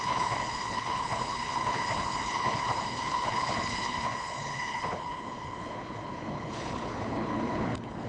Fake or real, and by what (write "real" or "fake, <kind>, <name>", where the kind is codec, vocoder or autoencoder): fake, codec, HILCodec